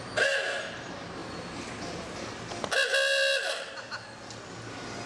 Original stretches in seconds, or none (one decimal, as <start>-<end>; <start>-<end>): 0.0-5.1